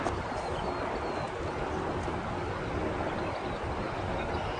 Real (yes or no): yes